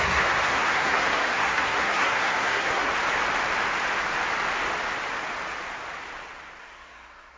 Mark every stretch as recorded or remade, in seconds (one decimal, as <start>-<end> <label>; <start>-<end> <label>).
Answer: 0.0-2.9 remade; 2.9-6.6 recorded; 6.6-7.4 remade